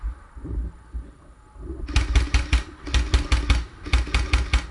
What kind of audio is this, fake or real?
real